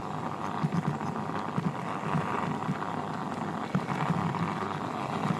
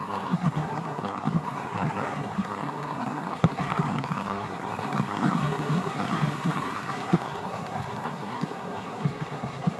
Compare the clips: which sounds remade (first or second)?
second